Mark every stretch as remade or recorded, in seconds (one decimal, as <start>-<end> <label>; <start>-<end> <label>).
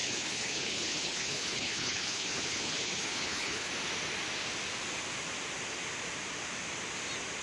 0.0-3.7 remade; 3.7-7.4 recorded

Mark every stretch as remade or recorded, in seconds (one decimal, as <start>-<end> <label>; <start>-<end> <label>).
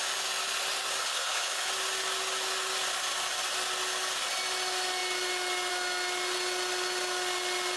0.0-1.0 recorded; 1.0-1.7 remade; 1.7-7.8 recorded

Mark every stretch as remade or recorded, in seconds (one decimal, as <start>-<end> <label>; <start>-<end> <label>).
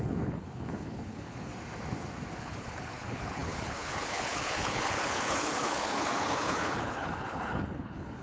0.0-1.5 remade; 1.5-2.4 recorded; 2.4-8.2 remade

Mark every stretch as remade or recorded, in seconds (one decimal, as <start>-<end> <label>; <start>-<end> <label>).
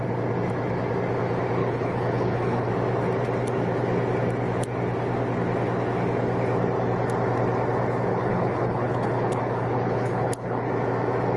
0.0-1.6 recorded; 1.6-2.7 remade; 2.7-8.1 recorded; 8.1-10.7 remade; 10.7-11.4 recorded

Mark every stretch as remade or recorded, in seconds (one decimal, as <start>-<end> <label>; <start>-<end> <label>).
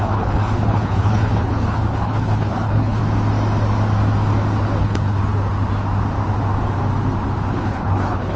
0.0-3.0 remade; 3.0-4.8 recorded; 4.8-5.2 remade; 5.2-7.5 recorded; 7.5-8.4 remade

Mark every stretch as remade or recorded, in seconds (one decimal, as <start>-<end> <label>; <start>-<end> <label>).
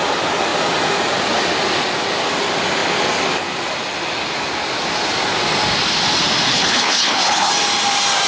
0.0-6.5 recorded; 6.5-7.5 remade; 7.5-8.3 recorded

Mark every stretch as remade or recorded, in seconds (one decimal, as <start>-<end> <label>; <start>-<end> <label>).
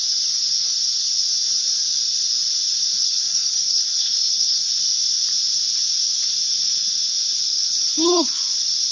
0.0-3.0 recorded; 3.0-4.7 remade; 4.7-7.5 recorded; 7.5-8.4 remade; 8.4-8.9 recorded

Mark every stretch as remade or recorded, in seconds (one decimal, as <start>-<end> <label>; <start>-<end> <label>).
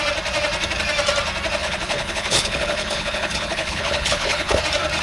0.0-1.6 recorded; 1.6-4.6 remade; 4.6-5.0 recorded